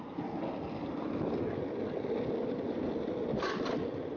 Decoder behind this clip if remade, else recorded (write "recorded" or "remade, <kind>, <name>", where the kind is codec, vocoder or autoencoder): recorded